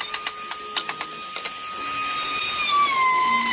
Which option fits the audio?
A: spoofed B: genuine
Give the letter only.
B